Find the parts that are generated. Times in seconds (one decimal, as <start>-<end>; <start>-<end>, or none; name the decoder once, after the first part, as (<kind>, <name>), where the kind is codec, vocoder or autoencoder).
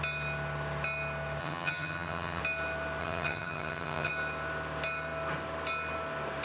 1.4-2.4 (vocoder, HiFi-GAN); 3.0-4.1